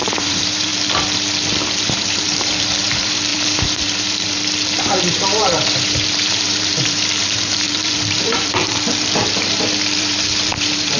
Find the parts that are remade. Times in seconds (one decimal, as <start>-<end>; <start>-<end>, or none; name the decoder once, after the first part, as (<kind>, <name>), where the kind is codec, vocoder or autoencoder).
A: 0.0-0.7 (vocoder, BigVGAN v2); 1.8-11.0